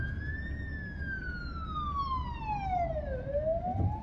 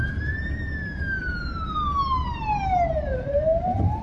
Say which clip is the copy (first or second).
second